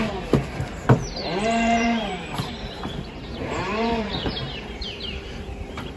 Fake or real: fake